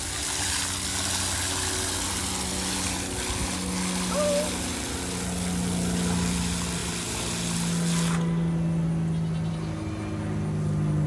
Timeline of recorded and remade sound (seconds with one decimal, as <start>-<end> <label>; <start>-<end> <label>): 0.0-11.1 recorded